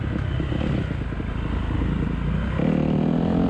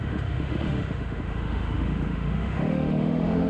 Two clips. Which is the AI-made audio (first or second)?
second